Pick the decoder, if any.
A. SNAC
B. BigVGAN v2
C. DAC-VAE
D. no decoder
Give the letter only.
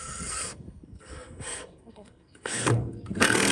A